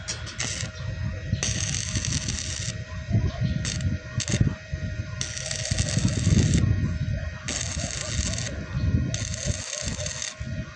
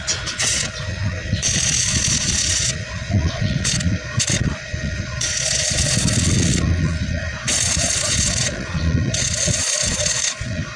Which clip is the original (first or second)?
first